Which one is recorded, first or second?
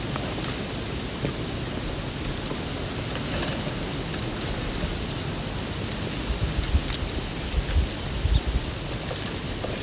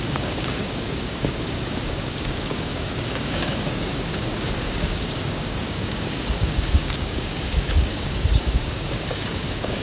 first